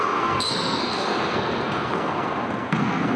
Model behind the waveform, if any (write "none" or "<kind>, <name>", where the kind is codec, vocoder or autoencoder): codec, SNAC